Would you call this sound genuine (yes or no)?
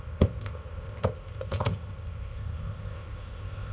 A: no